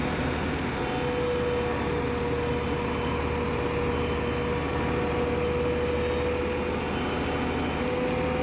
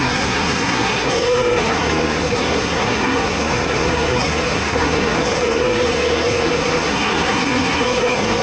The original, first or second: first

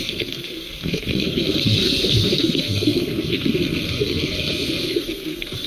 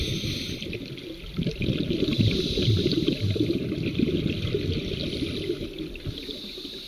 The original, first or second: second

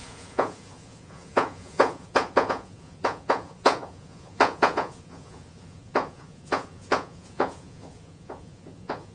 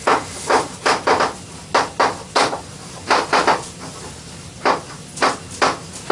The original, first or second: second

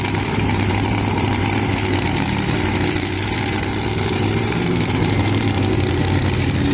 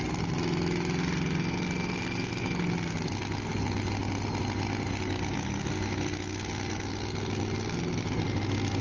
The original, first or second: second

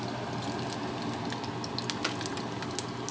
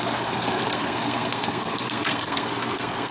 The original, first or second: first